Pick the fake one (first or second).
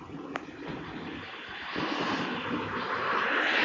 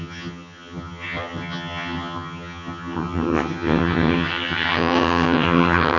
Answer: second